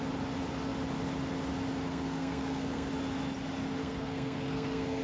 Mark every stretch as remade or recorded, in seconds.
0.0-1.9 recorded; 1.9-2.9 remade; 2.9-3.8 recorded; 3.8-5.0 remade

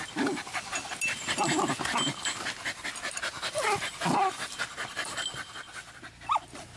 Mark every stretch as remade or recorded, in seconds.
0.0-6.8 recorded